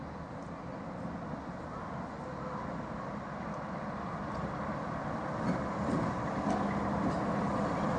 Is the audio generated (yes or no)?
no